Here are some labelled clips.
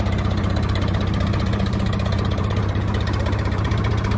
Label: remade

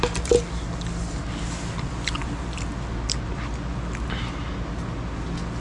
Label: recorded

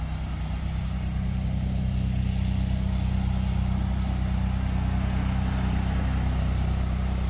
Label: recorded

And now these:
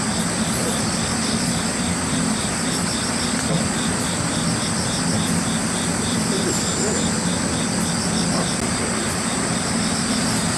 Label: recorded